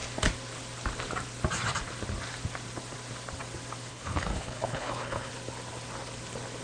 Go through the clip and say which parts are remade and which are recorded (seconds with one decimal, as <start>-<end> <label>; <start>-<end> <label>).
0.0-3.9 recorded; 3.9-5.3 remade; 5.3-6.6 recorded